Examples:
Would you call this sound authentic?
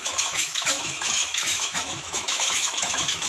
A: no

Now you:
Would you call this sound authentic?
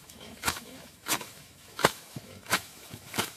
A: no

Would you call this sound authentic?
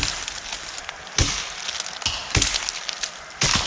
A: yes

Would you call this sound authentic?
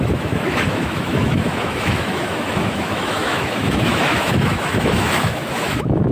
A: no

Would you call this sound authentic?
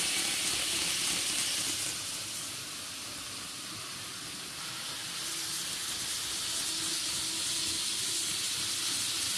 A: yes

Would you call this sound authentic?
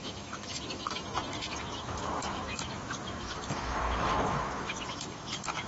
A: no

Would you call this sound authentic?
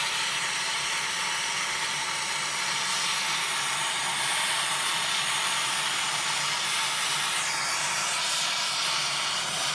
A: yes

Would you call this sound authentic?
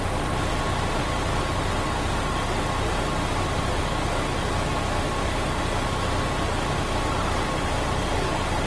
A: yes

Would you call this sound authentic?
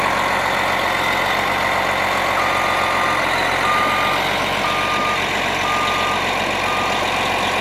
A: yes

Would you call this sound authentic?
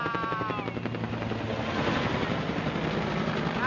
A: yes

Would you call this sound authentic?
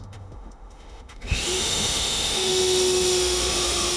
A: no